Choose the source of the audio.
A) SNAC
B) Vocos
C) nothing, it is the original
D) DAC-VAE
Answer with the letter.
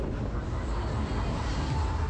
C